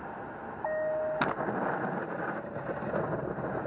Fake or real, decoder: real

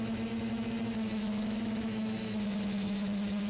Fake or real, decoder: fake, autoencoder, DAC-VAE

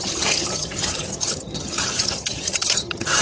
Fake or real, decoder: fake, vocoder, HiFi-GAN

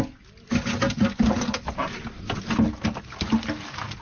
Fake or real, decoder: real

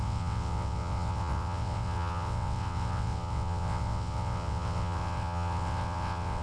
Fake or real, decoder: fake, vocoder, WaveNeXt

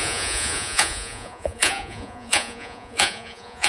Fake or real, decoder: fake, vocoder, Vocos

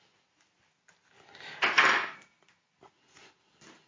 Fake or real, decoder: real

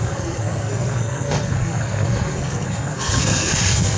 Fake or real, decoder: fake, codec, SNAC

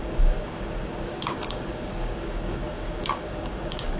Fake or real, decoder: fake, codec, DAC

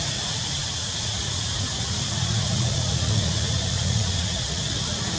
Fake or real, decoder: fake, vocoder, Vocos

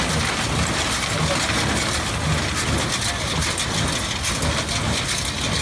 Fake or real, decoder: real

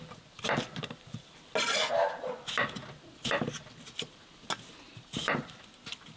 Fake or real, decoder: real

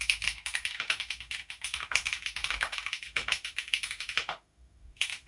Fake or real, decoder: fake, autoencoder, DAC-VAE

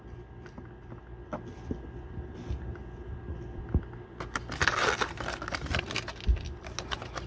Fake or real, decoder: real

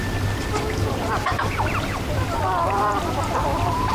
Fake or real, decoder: fake, vocoder, BigVGAN v2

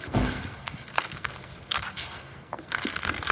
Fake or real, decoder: fake, codec, SNAC